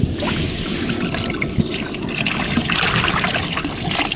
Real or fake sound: real